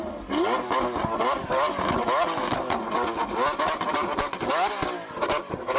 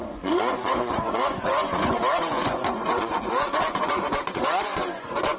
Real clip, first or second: first